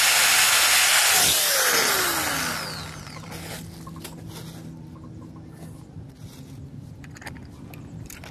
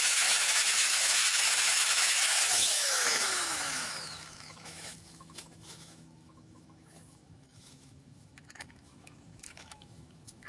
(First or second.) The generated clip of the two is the second